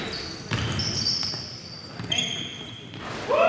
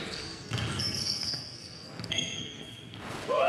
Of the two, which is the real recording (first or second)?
first